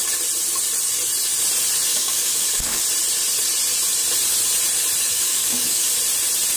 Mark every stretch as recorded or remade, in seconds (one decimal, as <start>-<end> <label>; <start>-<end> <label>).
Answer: 0.0-1.9 recorded; 1.9-2.8 remade; 2.8-5.1 recorded; 5.1-5.9 remade; 5.9-6.6 recorded